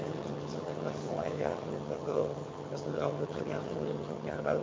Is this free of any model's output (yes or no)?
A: no